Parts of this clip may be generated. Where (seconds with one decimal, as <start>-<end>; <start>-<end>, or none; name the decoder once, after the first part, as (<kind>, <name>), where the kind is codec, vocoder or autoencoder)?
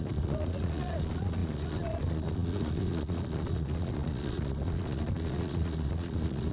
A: 0.0-6.5 (vocoder, Vocos)